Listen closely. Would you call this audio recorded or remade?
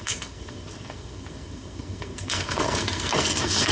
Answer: remade